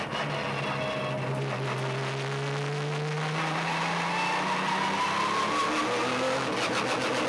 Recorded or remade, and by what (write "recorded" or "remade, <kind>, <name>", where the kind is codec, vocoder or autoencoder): recorded